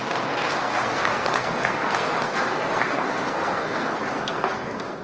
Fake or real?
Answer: fake